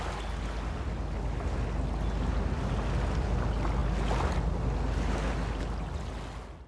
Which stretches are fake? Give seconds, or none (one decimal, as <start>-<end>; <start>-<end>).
none